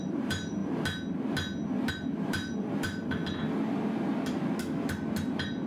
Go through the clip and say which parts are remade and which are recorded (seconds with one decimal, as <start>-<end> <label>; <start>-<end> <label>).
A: 0.0-0.6 remade; 0.6-1.9 recorded; 1.9-3.2 remade; 3.2-5.3 recorded; 5.3-5.7 remade